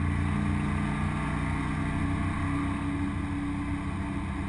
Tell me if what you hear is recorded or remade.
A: recorded